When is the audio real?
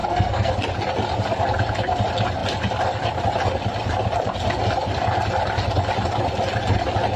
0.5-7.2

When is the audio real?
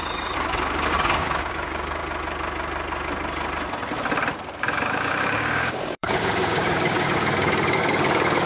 2.0-4.6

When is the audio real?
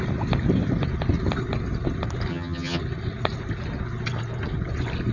0.0-2.3; 2.8-5.1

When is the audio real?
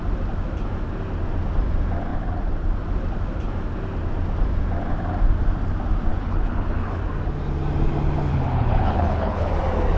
0.0-6.1; 7.0-8.3; 9.5-10.0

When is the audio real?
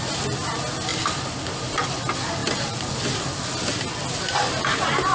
0.0-0.9; 1.7-5.1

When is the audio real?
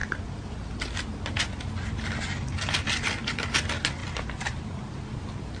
0.0-5.6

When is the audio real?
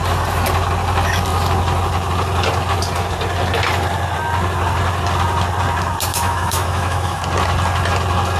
0.0-6.1; 7.2-8.4